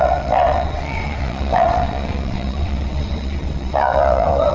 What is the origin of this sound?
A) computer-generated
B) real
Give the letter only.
A